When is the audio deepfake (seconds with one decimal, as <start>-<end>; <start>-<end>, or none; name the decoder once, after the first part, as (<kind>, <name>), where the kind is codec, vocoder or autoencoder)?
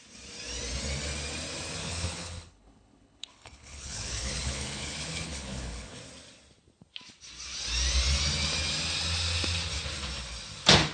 1.8-6.0 (codec, HILCodec)